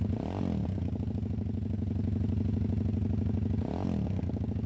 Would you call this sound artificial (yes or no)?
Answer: no